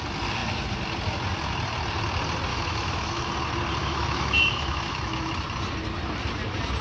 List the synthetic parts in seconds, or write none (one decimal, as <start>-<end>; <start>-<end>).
2.5-3.3; 3.8-5.3